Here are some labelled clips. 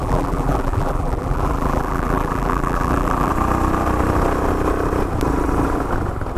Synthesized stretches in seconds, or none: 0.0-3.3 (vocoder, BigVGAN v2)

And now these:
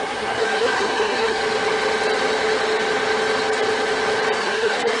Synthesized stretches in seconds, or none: 0.0-1.4 (codec, SNAC); 4.4-5.0

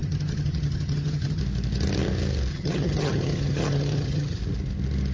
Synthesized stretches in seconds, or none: 0.0-1.4 (vocoder, HiFi-GAN); 2.5-4.4

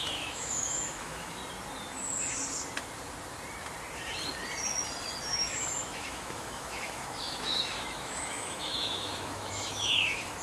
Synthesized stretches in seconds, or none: 0.0-1.4 (autoencoder, DAC-VAE); 5.3-10.4

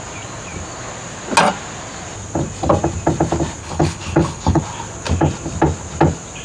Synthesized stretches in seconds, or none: 3.6-4.6 (codec, HILCodec)

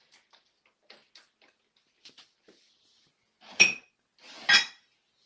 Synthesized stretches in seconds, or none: none

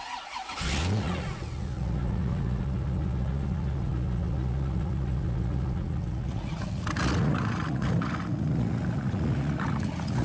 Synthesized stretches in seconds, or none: 0.0-10.2 (vocoder, Vocos)